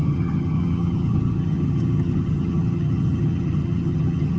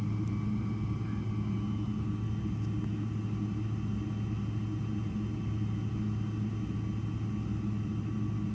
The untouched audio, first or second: second